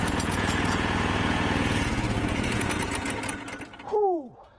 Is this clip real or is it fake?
fake